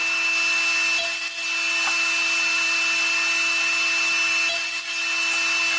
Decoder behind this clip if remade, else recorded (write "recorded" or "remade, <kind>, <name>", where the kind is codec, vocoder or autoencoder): recorded